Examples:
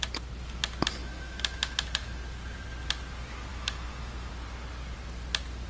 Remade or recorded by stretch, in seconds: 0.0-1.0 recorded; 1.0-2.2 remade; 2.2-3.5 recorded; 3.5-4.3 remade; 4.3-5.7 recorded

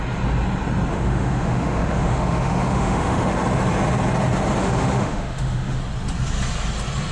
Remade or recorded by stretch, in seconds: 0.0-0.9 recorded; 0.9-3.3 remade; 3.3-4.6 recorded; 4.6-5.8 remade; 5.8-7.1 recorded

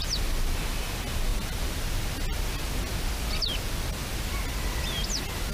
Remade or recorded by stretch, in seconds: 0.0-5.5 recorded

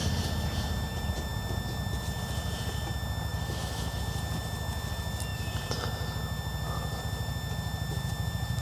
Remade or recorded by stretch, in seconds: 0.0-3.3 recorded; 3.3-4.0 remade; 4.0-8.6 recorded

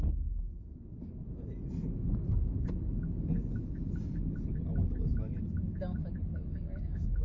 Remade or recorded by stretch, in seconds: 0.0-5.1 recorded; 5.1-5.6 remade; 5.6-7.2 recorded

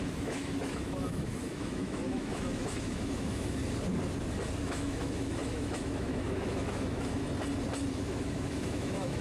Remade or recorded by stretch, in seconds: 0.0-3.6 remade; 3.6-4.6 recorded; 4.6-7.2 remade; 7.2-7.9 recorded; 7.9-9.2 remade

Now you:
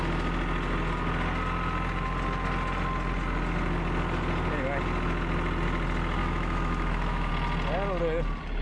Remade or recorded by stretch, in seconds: 0.0-6.2 recorded; 6.2-7.3 remade; 7.3-8.6 recorded

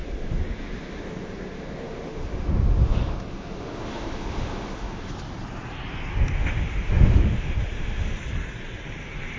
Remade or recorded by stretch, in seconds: 0.0-5.1 remade; 5.1-6.1 recorded; 6.1-8.1 remade; 8.1-9.4 recorded